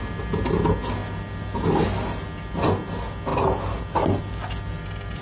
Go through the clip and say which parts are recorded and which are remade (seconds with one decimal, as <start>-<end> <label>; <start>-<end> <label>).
0.0-5.2 recorded